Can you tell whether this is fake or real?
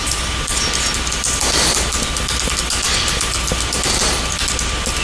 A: real